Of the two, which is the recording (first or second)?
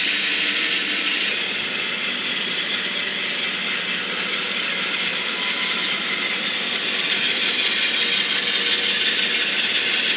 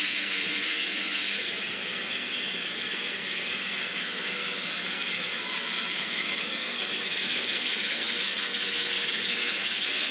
first